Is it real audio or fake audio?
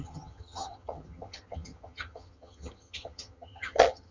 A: fake